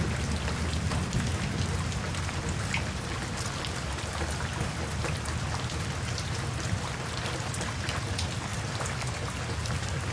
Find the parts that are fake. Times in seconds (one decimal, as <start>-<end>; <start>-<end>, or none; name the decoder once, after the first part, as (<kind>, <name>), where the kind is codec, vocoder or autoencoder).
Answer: none